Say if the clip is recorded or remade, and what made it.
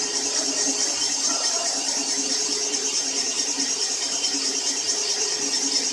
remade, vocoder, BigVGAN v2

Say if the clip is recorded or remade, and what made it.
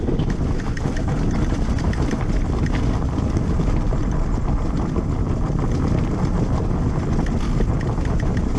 recorded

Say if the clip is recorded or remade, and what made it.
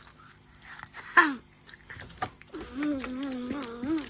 recorded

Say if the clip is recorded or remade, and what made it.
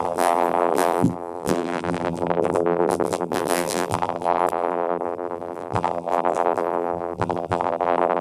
remade, vocoder, BigVGAN v2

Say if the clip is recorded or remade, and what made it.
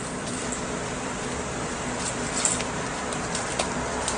remade, vocoder, BigVGAN v2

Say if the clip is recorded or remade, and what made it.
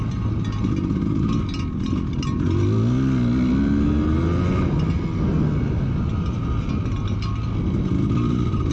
recorded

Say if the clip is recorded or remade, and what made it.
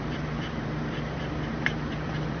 remade, vocoder, BigVGAN v2